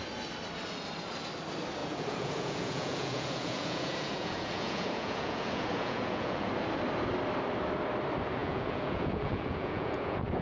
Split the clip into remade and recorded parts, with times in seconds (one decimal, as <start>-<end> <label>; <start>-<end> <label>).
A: 0.0-1.8 recorded; 1.8-6.5 remade; 6.5-8.4 recorded; 8.4-10.4 remade